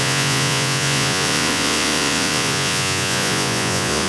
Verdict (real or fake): fake